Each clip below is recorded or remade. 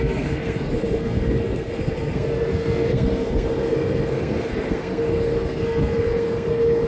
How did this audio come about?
remade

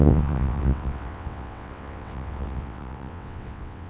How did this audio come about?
remade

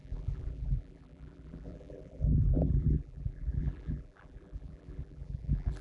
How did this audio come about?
remade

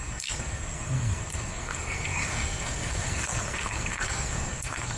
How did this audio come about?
remade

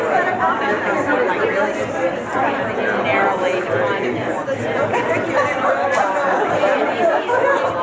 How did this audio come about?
recorded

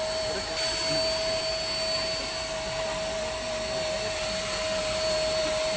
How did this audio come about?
recorded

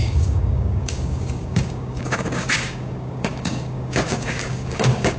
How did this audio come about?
remade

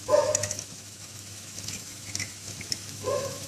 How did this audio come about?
remade